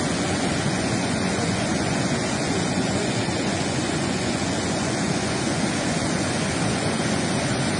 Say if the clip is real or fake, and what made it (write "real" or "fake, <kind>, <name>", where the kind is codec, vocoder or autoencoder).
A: fake, vocoder, Vocos